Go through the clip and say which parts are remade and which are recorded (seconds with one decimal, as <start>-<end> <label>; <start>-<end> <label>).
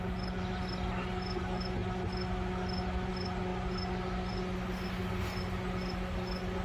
0.0-6.6 recorded